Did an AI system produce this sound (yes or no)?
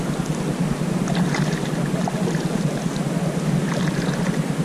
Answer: no